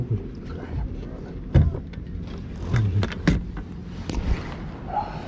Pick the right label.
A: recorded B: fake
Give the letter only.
A